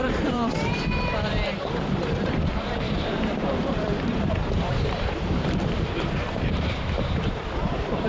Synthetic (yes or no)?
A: yes